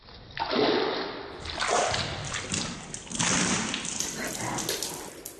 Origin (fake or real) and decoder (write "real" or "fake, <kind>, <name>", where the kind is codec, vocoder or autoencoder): real